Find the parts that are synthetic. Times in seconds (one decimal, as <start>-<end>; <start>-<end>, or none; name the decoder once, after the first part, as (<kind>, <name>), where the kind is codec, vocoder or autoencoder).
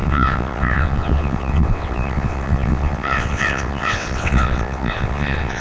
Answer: 0.0-5.6 (vocoder, WaveNeXt)